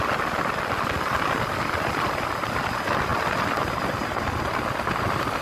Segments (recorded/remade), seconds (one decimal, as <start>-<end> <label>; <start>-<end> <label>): 0.0-5.4 recorded